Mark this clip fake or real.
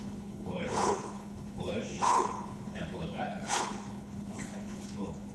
fake